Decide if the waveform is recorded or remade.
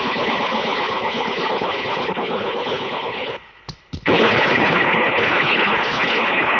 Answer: remade